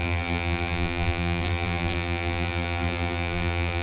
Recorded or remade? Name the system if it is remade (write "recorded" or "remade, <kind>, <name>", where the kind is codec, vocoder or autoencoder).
remade, vocoder, BigVGAN v2